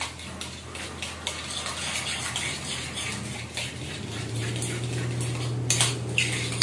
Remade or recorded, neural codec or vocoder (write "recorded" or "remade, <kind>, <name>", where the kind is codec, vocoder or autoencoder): recorded